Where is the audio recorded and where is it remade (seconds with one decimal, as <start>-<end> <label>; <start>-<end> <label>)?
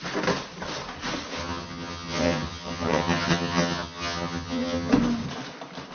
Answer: 0.0-1.4 recorded; 1.4-4.9 remade; 4.9-5.9 recorded